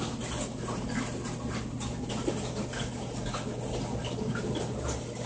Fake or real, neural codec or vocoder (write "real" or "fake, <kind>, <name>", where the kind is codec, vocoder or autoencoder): real